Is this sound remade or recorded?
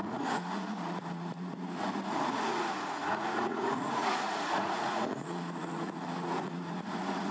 remade